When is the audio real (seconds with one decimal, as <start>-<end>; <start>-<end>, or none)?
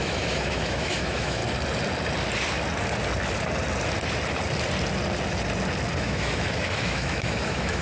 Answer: 1.4-6.0